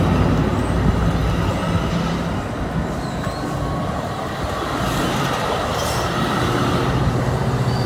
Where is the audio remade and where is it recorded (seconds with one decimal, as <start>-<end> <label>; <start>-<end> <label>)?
0.0-7.9 recorded

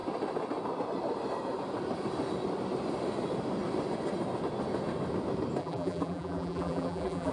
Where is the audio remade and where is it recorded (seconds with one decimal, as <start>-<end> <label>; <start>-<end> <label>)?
0.0-5.6 recorded; 5.6-7.3 remade

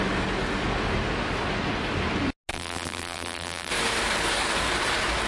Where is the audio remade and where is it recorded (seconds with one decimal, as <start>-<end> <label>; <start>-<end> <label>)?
0.0-2.5 recorded; 2.5-3.7 remade; 3.7-5.3 recorded